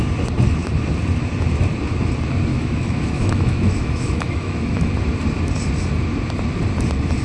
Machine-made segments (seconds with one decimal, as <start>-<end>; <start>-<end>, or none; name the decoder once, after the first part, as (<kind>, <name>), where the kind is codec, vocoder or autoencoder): 2.5-4.9 (autoencoder, DAC-VAE)